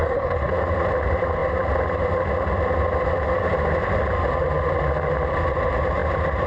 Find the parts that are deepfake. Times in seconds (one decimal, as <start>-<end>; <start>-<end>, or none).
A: 0.0-0.5